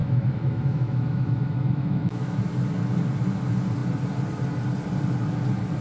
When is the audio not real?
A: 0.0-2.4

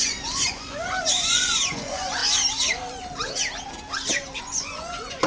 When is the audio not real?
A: 0.0-2.2; 4.4-5.3

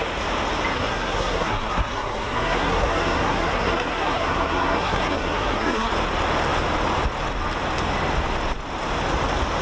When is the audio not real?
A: 0.7-5.9

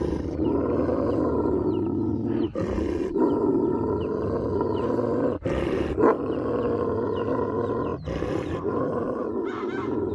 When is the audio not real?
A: none

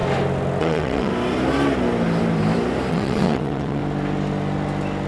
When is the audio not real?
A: 0.6-1.1; 2.9-3.8